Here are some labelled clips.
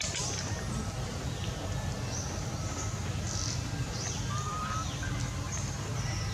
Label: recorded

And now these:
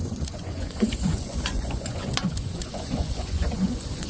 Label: remade